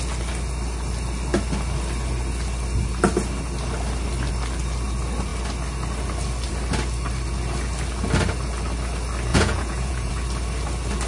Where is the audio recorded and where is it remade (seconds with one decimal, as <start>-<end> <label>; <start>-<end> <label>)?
0.0-9.3 recorded; 9.3-10.1 remade; 10.1-11.1 recorded